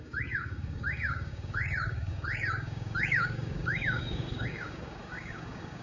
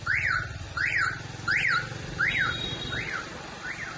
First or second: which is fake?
first